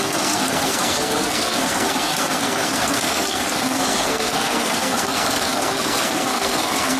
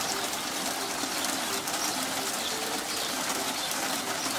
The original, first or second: second